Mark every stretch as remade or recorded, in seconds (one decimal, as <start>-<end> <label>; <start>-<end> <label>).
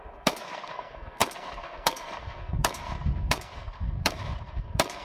0.0-5.0 remade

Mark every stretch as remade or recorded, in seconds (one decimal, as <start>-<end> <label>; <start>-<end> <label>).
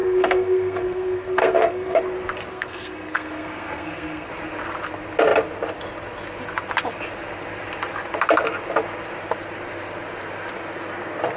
0.0-2.0 remade; 2.0-2.5 recorded; 2.5-4.3 remade; 4.3-11.4 recorded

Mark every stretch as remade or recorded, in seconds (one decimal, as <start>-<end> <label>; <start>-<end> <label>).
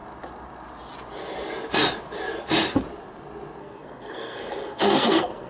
0.0-3.6 recorded; 3.6-5.5 remade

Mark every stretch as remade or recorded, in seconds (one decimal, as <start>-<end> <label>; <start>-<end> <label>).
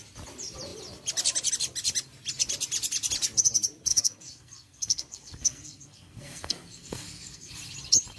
0.0-3.9 recorded; 3.9-7.5 remade; 7.5-8.2 recorded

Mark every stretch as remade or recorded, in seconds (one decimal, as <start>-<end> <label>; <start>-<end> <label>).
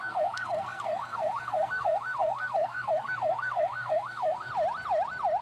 0.0-4.5 remade; 4.5-5.4 recorded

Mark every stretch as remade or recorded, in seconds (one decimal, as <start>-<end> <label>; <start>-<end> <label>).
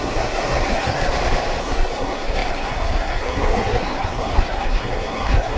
0.0-1.1 remade; 1.1-1.6 recorded; 1.6-5.6 remade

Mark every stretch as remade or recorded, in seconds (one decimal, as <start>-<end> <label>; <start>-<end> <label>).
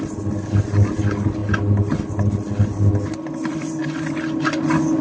0.0-5.0 recorded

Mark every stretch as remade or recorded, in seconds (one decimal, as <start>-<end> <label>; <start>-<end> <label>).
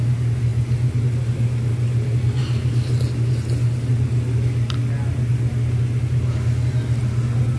0.0-7.6 recorded